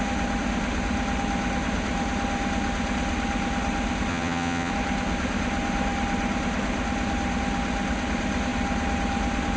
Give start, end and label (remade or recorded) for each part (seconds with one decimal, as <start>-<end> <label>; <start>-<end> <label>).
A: 0.0-4.1 recorded; 4.1-4.7 remade; 4.7-9.6 recorded